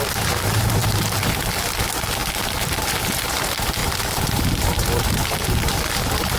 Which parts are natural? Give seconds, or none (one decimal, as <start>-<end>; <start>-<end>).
0.0-0.8; 1.3-2.2; 3.3-3.8; 5.9-6.4